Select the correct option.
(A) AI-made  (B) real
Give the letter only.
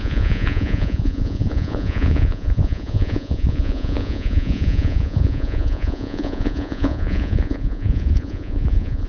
A